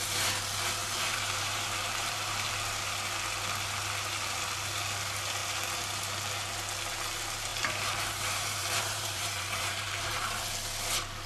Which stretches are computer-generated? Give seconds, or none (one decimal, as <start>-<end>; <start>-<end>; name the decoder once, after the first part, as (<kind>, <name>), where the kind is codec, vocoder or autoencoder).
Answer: 0.8-2.5 (vocoder, BigVGAN v2); 7.5-10.5